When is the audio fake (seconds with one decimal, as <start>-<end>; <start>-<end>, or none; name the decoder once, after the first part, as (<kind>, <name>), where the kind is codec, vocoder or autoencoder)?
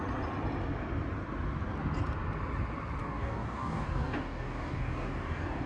3.0-5.7 (codec, DAC)